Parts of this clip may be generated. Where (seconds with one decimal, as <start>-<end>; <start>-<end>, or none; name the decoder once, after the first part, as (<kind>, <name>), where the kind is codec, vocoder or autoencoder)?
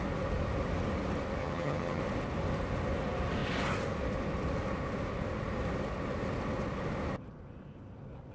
1.4-2.0 (vocoder, HiFi-GAN)